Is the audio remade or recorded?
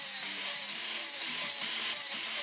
remade